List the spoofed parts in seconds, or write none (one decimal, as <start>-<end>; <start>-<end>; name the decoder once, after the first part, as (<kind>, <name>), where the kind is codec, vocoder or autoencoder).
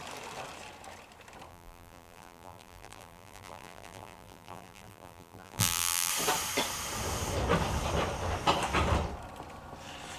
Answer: 1.5-6.1 (vocoder, BigVGAN v2)